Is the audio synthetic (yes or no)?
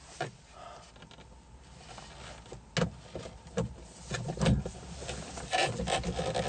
no